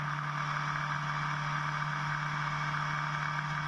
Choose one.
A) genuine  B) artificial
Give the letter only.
A